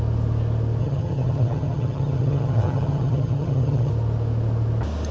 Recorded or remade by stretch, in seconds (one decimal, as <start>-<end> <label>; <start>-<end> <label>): 0.0-0.8 recorded; 0.8-3.9 remade; 3.9-5.1 recorded